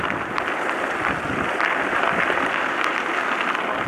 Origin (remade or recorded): recorded